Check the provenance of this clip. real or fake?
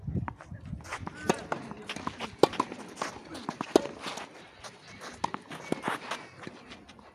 real